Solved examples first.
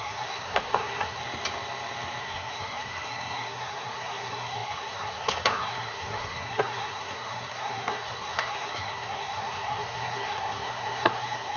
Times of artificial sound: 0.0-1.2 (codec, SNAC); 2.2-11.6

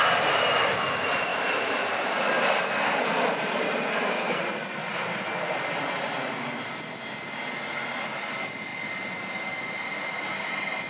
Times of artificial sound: 3.9-4.4 (codec, SNAC)

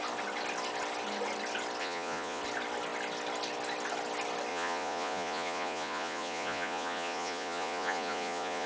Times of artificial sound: 1.8-2.4 (vocoder, Vocos); 4.5-8.7

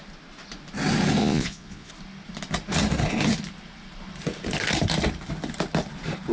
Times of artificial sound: 1.2-1.9 (vocoder, Vocos)

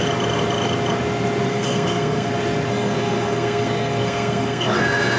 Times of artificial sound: 1.5-2.3 (codec, SNAC); 2.7-4.7

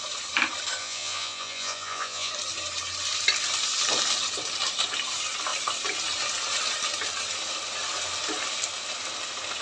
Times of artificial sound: 0.8-2.3 (vocoder, Vocos)

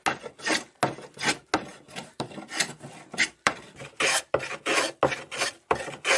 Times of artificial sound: 1.7-4.6 (vocoder, BigVGAN v2)

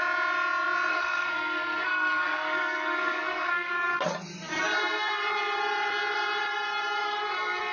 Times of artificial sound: 0.9-3.7 (codec, SNAC)